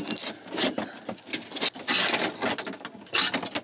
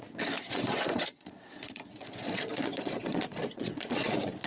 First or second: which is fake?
second